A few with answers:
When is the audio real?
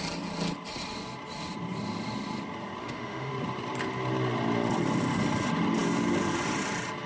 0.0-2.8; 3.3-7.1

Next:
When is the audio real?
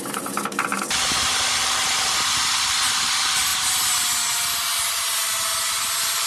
0.0-6.3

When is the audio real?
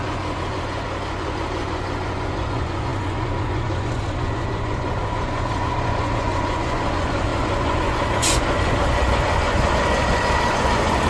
none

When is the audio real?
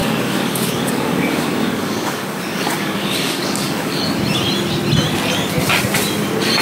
4.0-6.6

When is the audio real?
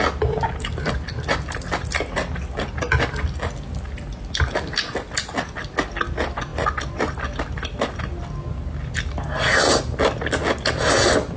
0.0-11.4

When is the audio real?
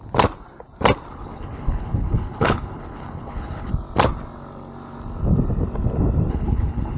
0.0-1.1; 3.7-6.3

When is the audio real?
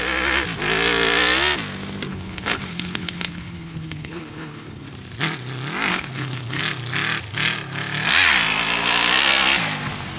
0.0-2.1; 4.9-5.9; 6.6-10.2